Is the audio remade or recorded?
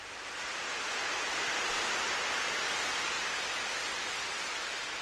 recorded